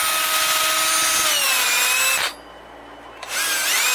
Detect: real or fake real